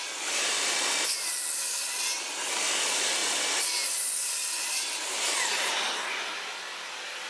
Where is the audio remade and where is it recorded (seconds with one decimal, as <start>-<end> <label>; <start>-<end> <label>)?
0.0-7.3 recorded